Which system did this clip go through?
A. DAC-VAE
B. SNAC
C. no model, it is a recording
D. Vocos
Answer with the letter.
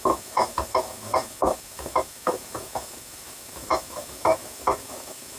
A